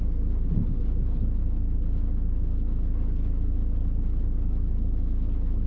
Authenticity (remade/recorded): recorded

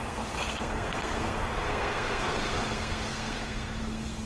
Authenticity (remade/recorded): remade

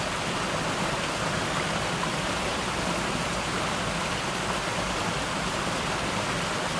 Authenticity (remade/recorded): recorded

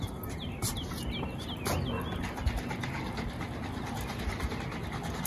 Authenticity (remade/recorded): recorded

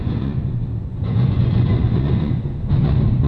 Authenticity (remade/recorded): remade